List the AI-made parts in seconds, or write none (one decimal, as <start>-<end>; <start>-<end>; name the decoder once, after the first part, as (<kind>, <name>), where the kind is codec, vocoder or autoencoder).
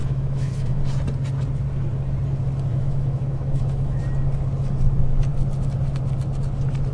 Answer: 0.0-0.8 (autoencoder, DAC-VAE); 2.7-4.0